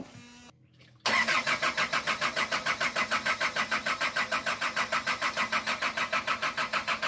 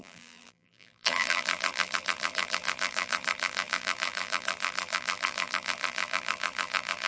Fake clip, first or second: second